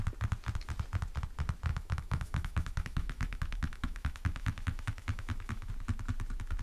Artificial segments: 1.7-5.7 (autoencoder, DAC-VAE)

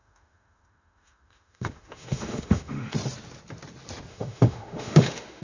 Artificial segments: 0.0-2.9 (autoencoder, DAC-VAE); 4.1-5.4